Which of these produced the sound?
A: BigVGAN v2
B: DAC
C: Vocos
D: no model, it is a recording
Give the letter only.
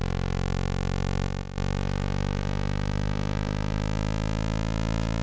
D